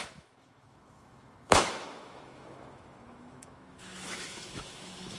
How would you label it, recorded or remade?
remade